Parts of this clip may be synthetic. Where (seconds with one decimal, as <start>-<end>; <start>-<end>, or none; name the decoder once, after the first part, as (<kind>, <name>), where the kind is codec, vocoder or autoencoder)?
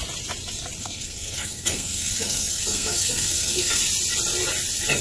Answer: 0.8-3.8 (codec, SNAC)